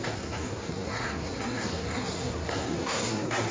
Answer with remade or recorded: remade